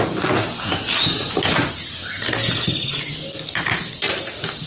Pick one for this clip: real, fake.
real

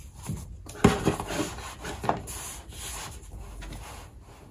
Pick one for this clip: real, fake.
real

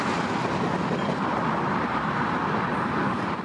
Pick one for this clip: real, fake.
real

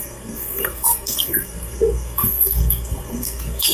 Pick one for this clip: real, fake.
fake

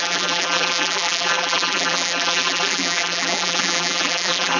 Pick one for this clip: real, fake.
fake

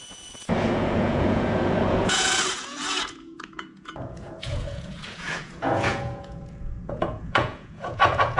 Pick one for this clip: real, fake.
fake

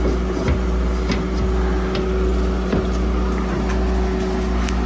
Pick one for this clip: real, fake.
real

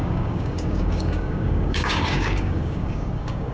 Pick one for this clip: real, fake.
fake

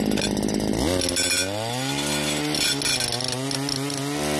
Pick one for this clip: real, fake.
real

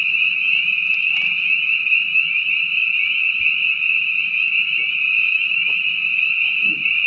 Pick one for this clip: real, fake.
real